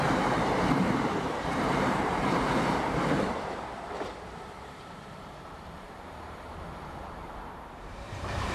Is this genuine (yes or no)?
no